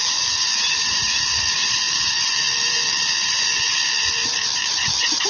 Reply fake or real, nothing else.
fake